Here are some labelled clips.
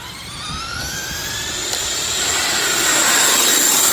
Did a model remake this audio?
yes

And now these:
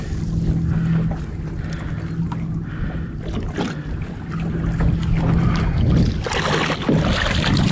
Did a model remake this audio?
no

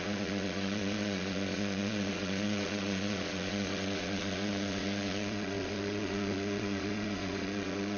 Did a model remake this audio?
yes